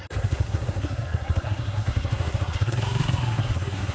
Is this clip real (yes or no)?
no